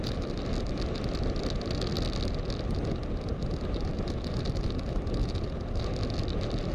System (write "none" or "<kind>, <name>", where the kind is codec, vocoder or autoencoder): none